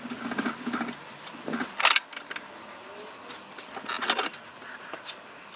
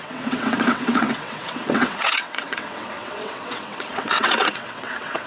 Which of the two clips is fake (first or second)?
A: second